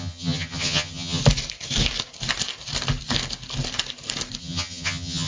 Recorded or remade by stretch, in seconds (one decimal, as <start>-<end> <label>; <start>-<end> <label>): 0.0-1.2 remade; 1.2-4.4 recorded; 4.4-5.3 remade